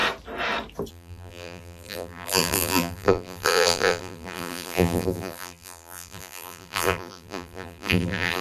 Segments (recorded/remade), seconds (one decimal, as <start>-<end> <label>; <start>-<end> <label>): 0.0-0.9 recorded; 0.9-8.4 remade